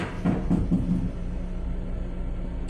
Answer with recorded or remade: recorded